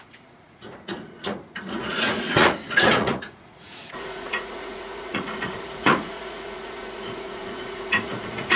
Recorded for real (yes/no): no